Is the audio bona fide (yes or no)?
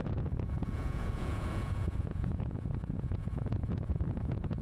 no